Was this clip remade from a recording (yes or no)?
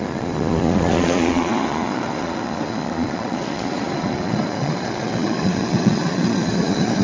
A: yes